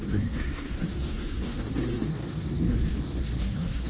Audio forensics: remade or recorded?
remade